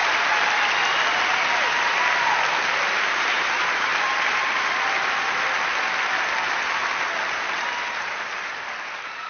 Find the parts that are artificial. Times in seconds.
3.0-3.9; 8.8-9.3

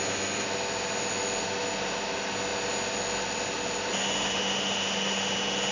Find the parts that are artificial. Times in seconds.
none

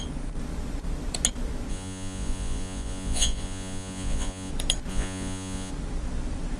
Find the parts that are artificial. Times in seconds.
1.7-4.5; 4.9-5.7

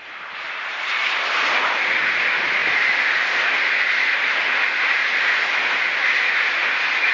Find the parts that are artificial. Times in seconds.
none

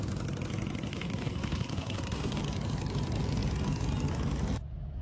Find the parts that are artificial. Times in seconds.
0.9-2.4

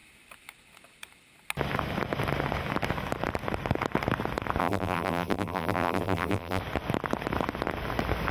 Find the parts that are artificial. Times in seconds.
4.6-6.6